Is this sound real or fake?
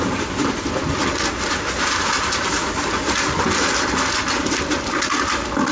real